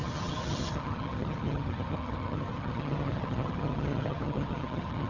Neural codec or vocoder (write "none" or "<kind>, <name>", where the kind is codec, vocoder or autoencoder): vocoder, HiFi-GAN